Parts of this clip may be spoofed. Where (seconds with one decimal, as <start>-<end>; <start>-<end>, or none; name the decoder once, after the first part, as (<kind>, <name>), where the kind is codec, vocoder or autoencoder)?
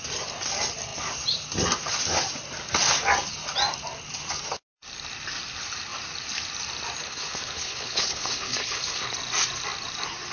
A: 7.0-9.1 (codec, HILCodec)